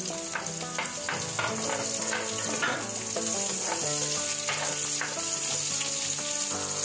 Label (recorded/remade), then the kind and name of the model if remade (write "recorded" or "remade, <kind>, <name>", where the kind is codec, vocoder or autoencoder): recorded